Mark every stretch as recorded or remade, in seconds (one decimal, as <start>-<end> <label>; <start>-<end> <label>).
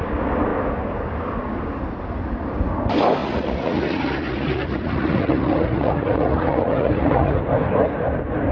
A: 0.0-3.2 recorded; 3.2-7.4 remade; 7.4-8.5 recorded